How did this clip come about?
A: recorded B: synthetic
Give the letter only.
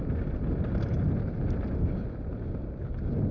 A